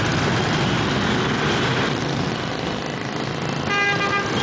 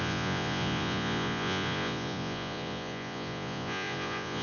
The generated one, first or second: second